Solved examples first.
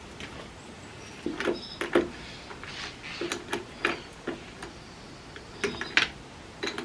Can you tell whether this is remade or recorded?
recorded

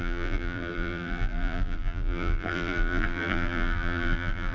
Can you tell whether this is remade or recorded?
remade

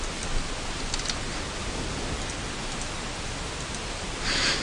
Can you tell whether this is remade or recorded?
recorded